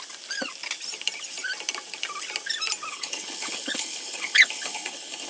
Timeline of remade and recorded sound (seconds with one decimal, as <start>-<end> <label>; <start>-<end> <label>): 0.0-2.9 recorded; 2.9-5.3 remade